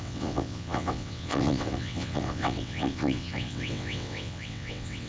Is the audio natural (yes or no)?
no